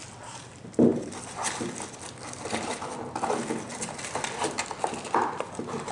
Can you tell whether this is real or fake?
real